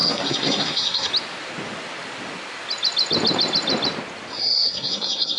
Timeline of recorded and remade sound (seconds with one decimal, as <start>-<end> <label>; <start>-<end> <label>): 0.0-1.1 remade; 1.1-4.3 recorded; 4.3-5.4 remade